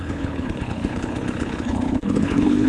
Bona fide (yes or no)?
no